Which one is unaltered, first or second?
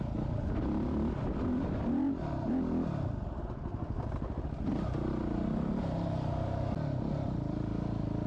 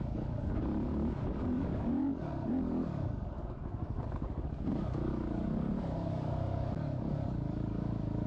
first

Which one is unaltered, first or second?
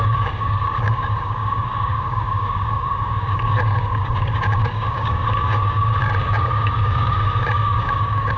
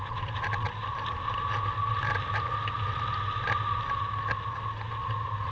second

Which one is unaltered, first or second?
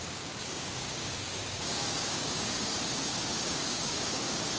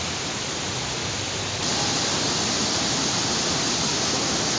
second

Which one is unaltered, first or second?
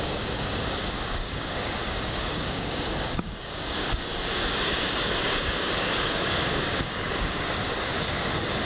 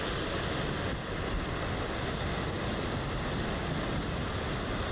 second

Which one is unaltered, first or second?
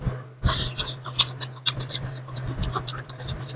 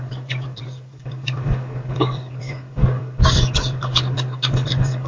first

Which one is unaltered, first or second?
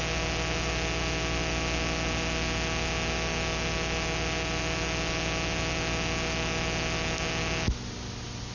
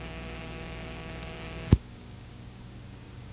first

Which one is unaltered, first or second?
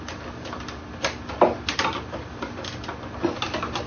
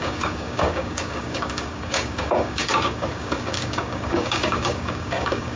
first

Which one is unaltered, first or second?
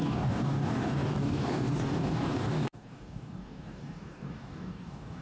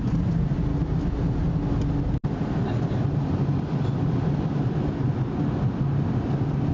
second